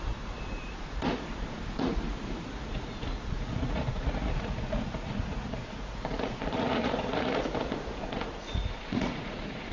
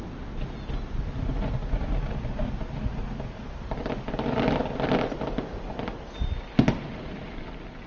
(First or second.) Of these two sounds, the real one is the second